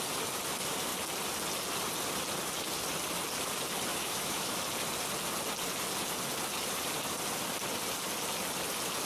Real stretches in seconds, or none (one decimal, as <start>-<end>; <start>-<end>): 0.0-3.9; 4.6-9.1